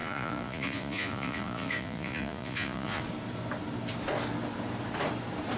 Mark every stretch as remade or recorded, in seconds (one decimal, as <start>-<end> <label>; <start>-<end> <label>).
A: 0.0-3.0 remade; 3.0-5.6 recorded